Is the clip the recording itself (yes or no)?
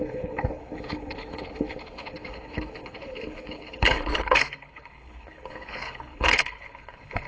no